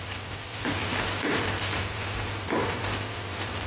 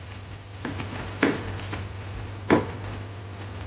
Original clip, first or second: second